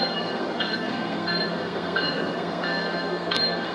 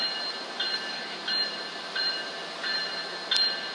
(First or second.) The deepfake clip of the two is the first